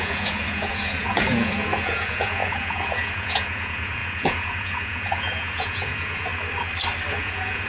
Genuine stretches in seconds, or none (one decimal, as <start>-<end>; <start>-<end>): 6.3-7.1